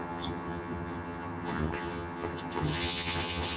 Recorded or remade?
remade